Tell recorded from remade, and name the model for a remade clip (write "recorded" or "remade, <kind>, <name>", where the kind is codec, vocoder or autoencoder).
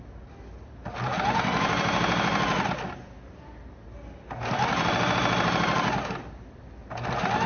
recorded